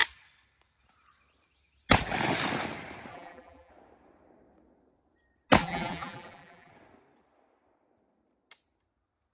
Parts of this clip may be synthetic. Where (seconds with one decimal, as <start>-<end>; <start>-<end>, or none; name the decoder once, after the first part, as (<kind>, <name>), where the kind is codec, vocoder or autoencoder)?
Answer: 3.1-3.7 (vocoder, BigVGAN v2); 5.6-6.7